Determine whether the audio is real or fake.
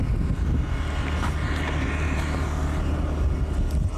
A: real